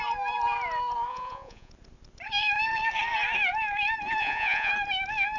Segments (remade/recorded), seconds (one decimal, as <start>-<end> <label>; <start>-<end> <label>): 0.0-1.1 recorded; 1.1-1.7 remade; 1.7-4.2 recorded; 4.2-4.7 remade; 4.7-5.4 recorded